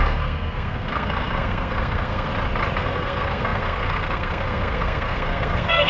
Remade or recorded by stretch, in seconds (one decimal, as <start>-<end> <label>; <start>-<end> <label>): 0.0-2.3 remade; 2.3-2.8 recorded; 2.8-5.9 remade